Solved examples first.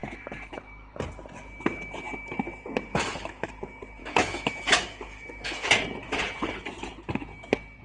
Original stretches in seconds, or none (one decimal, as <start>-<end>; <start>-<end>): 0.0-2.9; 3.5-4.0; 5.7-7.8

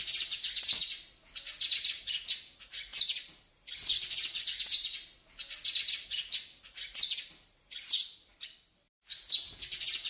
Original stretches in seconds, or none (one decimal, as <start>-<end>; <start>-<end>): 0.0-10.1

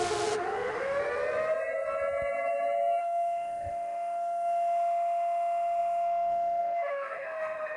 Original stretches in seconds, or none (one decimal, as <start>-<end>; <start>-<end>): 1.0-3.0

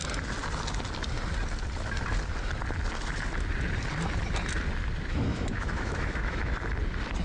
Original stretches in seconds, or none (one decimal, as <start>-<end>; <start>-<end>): 0.0-5.3; 6.5-7.2

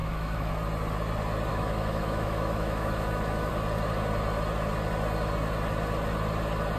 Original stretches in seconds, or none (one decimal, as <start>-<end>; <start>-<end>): 0.5-1.5; 3.5-6.8

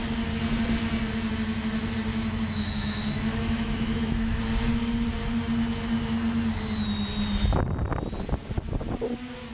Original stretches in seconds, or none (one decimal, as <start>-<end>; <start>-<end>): 0.0-2.1; 4.4-9.5